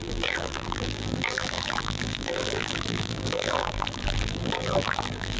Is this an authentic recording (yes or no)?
no